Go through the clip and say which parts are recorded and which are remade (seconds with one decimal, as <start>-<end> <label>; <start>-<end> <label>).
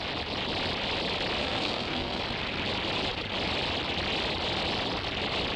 0.0-1.4 recorded; 1.4-2.2 remade; 2.2-5.6 recorded